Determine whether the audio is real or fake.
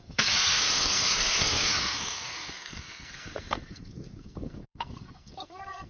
fake